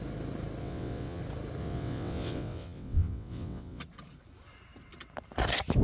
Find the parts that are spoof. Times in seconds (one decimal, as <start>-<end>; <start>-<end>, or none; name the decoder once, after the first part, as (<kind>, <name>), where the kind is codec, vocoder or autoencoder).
0.6-1.2 (vocoder, WaveNeXt); 1.6-3.8